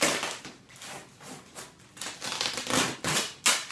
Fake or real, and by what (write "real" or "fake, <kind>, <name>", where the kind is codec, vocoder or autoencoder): real